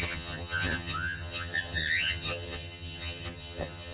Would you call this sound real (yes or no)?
no